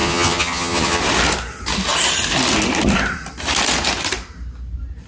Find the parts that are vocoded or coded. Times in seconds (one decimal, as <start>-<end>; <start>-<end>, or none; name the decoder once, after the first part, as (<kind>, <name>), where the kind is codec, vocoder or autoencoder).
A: 0.0-1.0 (vocoder, HiFi-GAN)